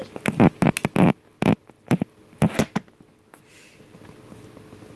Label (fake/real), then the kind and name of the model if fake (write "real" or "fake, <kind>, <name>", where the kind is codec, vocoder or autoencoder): real